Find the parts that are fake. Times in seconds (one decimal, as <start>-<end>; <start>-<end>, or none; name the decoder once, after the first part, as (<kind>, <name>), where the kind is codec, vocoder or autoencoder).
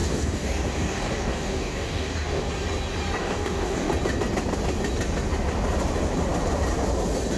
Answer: 0.0-2.4 (codec, DAC); 3.2-3.9